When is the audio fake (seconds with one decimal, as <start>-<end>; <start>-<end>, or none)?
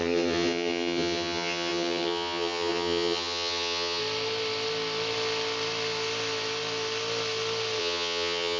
0.0-4.0; 7.8-8.6